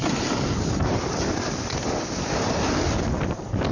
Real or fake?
real